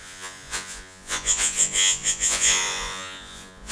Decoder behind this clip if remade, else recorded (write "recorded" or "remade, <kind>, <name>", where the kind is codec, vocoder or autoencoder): remade, vocoder, Vocos